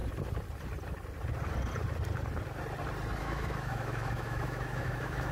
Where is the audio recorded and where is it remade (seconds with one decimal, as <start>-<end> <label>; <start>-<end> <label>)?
0.0-3.2 recorded; 3.2-5.3 remade